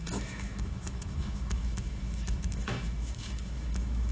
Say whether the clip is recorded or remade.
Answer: remade